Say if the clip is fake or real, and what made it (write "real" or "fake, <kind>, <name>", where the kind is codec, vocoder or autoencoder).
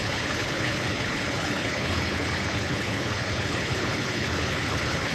fake, codec, HILCodec